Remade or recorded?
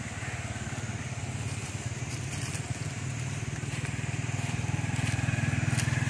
recorded